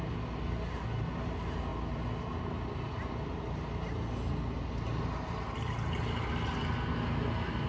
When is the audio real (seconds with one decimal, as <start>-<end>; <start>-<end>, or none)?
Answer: 0.0-7.7